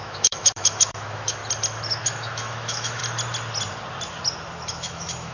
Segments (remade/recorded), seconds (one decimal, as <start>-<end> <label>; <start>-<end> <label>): 0.0-1.4 remade; 1.4-2.0 recorded; 2.0-3.0 remade; 3.0-4.7 recorded; 4.7-5.3 remade